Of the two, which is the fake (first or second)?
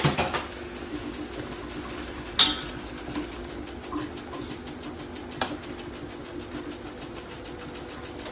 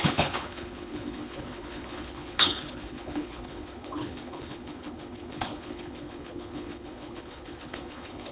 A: second